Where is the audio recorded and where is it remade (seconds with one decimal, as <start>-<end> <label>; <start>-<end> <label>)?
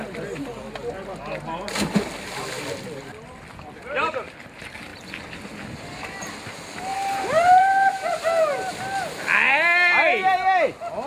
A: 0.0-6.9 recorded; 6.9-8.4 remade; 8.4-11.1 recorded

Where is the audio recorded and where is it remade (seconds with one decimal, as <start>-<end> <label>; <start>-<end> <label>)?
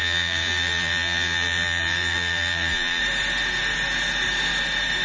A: 0.0-3.0 remade; 3.0-5.0 recorded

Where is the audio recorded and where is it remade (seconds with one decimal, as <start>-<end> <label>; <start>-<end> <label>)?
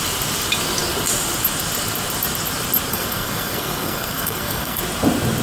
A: 0.0-2.9 recorded; 2.9-4.8 remade; 4.8-5.4 recorded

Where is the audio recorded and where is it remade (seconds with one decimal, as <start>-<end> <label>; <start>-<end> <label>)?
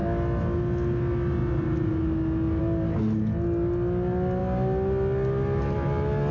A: 0.0-6.3 recorded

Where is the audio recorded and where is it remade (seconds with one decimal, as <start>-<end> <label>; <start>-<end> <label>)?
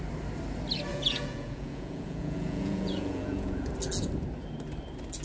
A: 0.0-0.9 recorded; 0.9-3.7 remade; 3.7-5.2 recorded